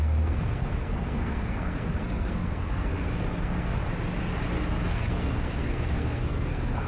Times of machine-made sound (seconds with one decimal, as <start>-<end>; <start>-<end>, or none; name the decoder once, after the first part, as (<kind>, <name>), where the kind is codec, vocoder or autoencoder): 0.0-3.8 (codec, SNAC); 4.9-6.9